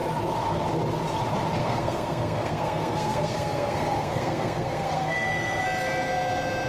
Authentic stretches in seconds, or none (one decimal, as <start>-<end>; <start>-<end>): 0.0-1.6; 5.6-6.7